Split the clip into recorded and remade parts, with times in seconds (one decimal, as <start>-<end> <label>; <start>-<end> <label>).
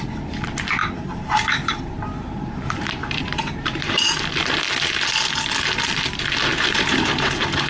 0.0-0.8 recorded; 0.8-4.1 remade; 4.1-6.5 recorded; 6.5-7.7 remade